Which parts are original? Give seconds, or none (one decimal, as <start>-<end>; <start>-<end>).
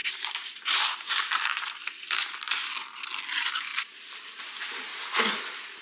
1.4-3.7; 4.4-5.8